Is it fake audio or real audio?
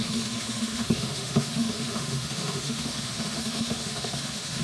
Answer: fake